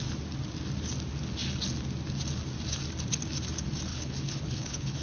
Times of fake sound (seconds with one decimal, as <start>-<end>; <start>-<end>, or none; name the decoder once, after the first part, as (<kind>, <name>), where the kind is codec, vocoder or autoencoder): 3.9-5.0 (codec, HILCodec)